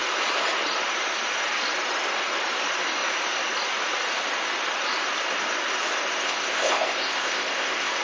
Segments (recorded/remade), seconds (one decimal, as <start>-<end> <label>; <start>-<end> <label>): 0.0-6.2 recorded; 6.2-8.0 remade